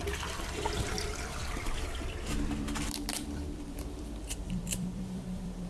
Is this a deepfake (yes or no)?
yes